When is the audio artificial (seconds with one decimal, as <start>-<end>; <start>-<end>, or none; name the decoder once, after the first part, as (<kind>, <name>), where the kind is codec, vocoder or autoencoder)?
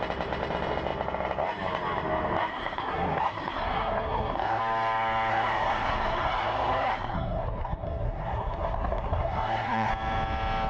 2.5-4.6 (codec, SNAC); 5.3-9.9